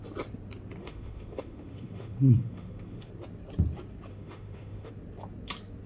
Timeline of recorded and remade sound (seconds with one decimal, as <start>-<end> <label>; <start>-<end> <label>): 0.0-0.8 recorded; 0.8-3.1 remade; 3.1-4.1 recorded; 4.1-4.9 remade; 4.9-5.9 recorded